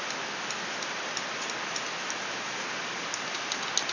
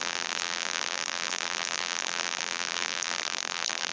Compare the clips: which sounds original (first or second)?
first